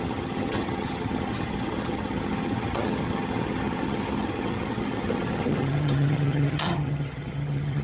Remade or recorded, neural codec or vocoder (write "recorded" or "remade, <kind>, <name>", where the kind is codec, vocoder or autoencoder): remade, vocoder, HiFi-GAN